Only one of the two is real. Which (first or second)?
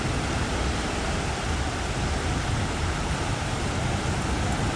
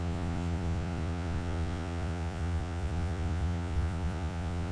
first